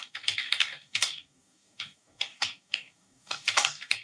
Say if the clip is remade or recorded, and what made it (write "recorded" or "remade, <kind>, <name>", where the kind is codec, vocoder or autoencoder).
remade, codec, DAC